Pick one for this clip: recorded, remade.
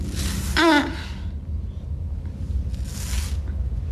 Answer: recorded